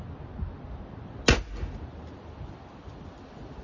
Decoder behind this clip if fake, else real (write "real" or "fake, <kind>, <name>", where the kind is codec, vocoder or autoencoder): real